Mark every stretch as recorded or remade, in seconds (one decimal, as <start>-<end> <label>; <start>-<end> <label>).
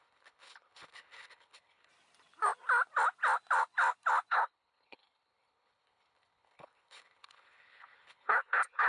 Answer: 0.0-1.9 remade; 1.9-4.3 recorded; 4.3-8.9 remade